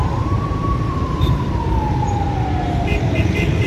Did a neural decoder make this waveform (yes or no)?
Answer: yes